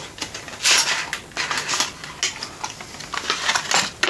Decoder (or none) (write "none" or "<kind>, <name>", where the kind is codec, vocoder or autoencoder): none